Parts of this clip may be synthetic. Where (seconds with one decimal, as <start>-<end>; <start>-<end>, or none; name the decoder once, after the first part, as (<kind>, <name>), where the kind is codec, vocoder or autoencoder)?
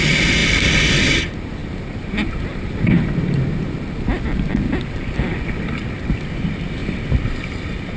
none